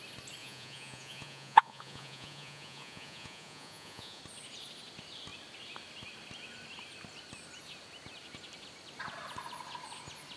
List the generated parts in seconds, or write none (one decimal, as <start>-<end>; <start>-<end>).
0.4-4.2